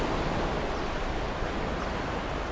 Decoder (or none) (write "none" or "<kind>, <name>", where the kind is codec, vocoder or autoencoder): none